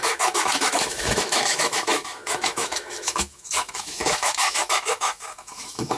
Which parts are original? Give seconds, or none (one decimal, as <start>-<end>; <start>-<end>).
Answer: none